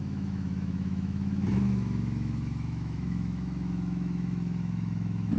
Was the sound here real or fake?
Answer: fake